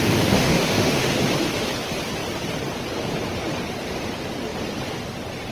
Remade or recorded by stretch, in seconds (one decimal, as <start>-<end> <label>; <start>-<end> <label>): 0.0-1.2 remade; 1.2-5.5 recorded